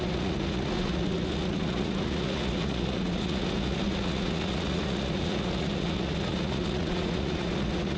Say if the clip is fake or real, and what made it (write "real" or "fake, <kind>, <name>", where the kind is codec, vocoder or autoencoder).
fake, vocoder, Vocos